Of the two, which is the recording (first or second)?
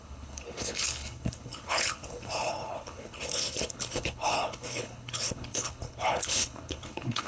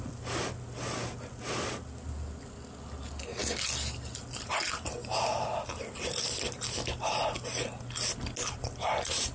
second